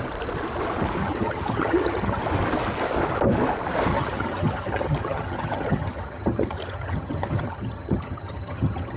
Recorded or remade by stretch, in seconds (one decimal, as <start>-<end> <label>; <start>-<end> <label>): 0.0-1.0 recorded; 1.0-2.2 remade; 2.2-3.9 recorded; 3.9-9.0 remade